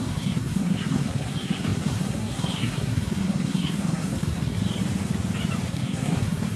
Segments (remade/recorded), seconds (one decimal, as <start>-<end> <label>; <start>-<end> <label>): 0.0-4.6 remade; 4.6-5.7 recorded; 5.7-6.6 remade